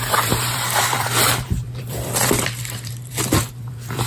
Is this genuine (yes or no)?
no